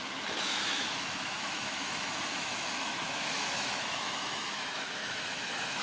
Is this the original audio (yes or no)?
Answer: no